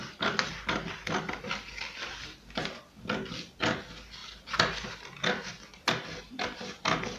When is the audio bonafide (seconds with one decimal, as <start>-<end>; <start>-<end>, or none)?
0.0-7.2